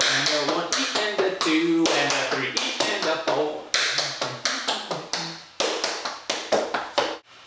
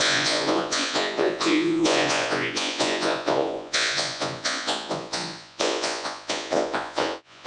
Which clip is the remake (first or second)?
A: second